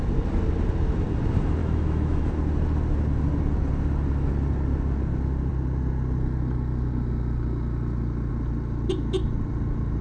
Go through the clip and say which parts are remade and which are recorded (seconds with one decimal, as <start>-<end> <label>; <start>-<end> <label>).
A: 0.0-1.6 recorded; 1.6-2.3 remade; 2.3-10.0 recorded